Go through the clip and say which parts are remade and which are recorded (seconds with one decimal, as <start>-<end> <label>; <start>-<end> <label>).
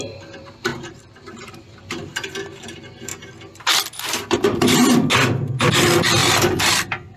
0.0-3.1 remade; 3.1-5.8 recorded; 5.8-6.2 remade; 6.2-7.2 recorded